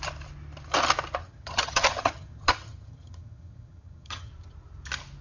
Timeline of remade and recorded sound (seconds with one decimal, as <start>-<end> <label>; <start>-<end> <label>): 0.0-1.2 recorded; 1.2-4.3 remade; 4.3-5.2 recorded

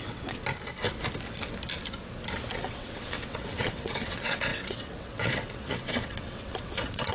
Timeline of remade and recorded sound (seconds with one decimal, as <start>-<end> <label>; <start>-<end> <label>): 0.0-0.4 remade; 0.4-2.5 recorded; 2.5-7.1 remade

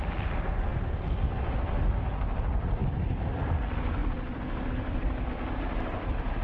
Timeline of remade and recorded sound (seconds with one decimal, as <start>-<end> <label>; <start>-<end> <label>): 0.0-6.4 recorded